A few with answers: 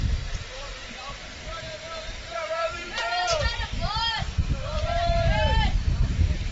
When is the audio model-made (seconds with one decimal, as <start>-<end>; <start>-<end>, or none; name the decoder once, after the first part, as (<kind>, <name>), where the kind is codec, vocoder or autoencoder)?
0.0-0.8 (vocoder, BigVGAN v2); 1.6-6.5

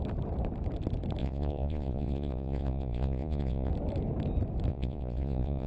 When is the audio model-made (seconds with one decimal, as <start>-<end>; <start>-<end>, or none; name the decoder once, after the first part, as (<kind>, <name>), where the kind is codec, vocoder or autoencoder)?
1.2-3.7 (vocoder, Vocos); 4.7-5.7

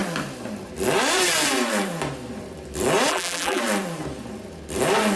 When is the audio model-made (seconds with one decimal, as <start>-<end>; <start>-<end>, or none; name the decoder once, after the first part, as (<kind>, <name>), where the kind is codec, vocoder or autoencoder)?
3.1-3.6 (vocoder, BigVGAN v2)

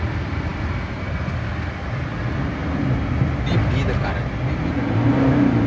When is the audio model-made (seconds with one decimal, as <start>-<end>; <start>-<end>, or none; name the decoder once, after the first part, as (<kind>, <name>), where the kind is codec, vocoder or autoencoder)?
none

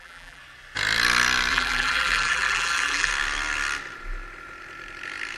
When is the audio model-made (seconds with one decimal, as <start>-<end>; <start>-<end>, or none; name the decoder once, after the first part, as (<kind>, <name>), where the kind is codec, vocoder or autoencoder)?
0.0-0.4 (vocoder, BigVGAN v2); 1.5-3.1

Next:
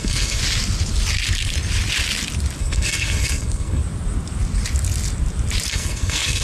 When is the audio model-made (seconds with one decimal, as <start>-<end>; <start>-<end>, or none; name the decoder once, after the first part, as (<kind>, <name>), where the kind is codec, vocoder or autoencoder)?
0.0-0.4 (codec, SNAC); 2.6-3.8; 5.7-6.4